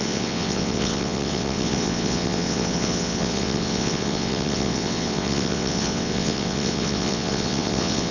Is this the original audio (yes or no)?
no